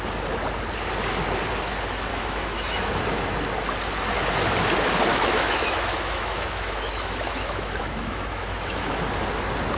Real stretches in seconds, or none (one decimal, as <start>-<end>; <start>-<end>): 0.0-2.1; 3.0-5.1; 9.0-9.8